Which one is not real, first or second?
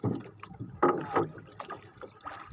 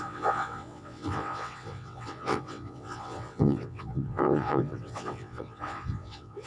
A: second